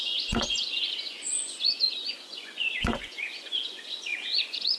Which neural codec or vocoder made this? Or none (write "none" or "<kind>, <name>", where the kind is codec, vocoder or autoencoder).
vocoder, Vocos